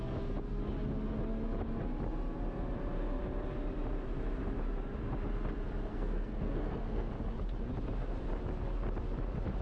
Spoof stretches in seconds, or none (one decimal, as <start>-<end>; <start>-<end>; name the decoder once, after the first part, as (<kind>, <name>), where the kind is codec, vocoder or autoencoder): 5.9-7.1 (codec, SNAC)